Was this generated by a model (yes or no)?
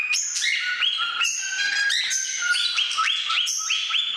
no